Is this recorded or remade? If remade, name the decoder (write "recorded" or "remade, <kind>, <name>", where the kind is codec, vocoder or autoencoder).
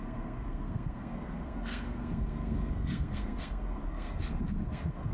remade, codec, SNAC